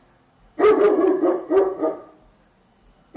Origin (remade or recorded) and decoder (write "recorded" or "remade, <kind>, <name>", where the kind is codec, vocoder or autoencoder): recorded